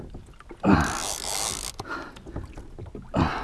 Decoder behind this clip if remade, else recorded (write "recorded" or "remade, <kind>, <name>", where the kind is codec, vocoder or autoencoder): recorded